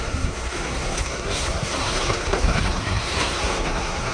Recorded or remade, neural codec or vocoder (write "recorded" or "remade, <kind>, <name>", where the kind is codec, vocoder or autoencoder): remade, codec, SNAC